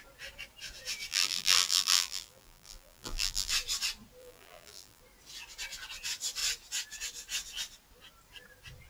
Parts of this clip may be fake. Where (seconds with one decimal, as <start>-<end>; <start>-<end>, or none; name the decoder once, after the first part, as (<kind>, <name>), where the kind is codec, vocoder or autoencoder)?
1.1-3.5 (vocoder, BigVGAN v2); 4.2-5.0